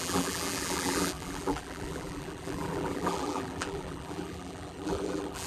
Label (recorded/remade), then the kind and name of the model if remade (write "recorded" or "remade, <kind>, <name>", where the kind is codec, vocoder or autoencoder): remade, vocoder, BigVGAN v2